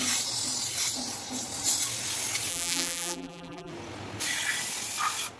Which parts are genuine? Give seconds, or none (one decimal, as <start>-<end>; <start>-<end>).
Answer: 0.0-2.5; 3.7-5.4